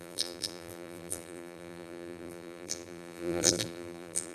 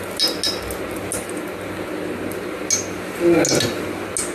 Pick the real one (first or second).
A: second